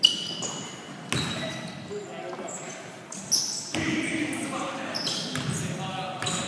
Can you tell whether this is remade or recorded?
recorded